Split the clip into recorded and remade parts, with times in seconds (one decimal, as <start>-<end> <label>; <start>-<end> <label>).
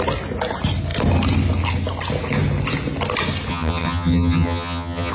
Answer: 0.0-3.5 recorded; 3.5-5.1 remade